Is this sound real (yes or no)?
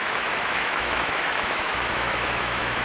no